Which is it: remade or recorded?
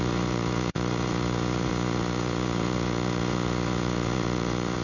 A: remade